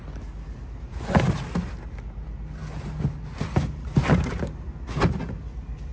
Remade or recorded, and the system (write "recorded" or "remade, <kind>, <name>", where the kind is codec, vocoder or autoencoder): recorded